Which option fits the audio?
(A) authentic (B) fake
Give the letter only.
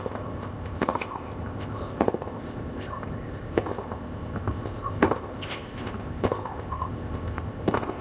B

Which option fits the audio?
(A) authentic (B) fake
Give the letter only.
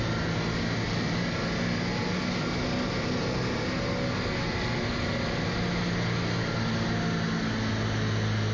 A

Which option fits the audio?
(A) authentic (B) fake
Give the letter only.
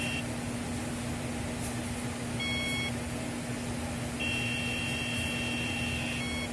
A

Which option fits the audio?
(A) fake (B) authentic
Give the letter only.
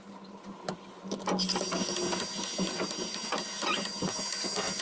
B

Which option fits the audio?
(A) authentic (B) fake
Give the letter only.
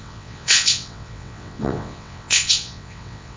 B